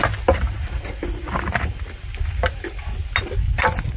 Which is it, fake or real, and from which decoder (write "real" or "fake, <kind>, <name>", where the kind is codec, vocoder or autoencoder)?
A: real